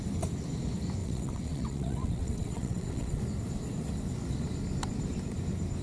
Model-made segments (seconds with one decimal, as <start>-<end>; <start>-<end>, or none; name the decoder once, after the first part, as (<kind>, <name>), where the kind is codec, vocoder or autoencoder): 1.0-3.2 (vocoder, WaveNeXt)